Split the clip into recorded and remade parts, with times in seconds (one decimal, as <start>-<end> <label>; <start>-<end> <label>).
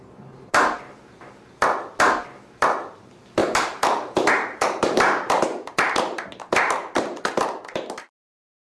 0.0-0.5 recorded; 0.5-1.4 remade; 1.4-3.4 recorded; 3.4-7.2 remade; 7.2-8.6 recorded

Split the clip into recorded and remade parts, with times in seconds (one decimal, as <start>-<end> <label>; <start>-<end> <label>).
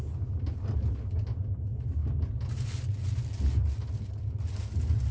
0.0-5.1 recorded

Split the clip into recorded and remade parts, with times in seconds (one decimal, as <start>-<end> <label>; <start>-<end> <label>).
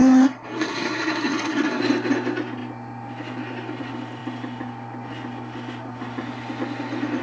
0.0-1.8 remade; 1.8-7.2 recorded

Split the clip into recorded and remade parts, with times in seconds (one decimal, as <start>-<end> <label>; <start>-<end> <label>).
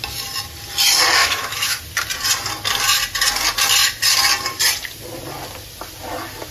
0.0-1.2 recorded; 1.2-1.8 remade; 1.8-6.5 recorded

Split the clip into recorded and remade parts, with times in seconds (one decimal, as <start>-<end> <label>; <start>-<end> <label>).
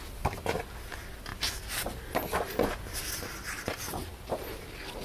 0.0-5.0 recorded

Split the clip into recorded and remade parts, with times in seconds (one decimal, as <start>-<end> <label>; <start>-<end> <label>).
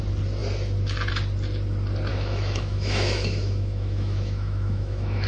0.0-2.1 recorded; 2.1-5.3 remade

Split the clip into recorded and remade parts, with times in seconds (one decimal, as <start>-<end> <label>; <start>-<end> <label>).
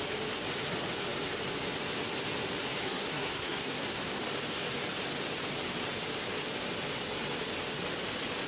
0.0-2.8 recorded; 2.8-4.2 remade; 4.2-8.5 recorded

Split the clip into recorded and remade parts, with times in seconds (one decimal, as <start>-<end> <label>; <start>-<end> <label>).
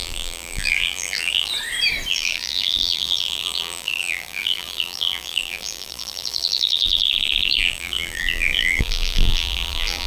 0.0-1.5 remade; 1.5-2.1 recorded; 2.1-10.1 remade